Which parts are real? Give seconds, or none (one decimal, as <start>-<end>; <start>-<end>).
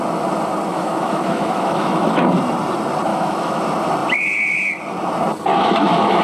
0.0-0.7; 2.2-3.1; 3.6-5.5